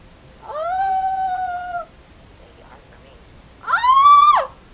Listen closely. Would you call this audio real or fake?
real